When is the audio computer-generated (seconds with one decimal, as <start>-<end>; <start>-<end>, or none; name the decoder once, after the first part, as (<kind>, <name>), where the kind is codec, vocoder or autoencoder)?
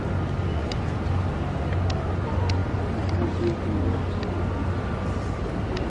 0.5-1.0 (vocoder, Vocos)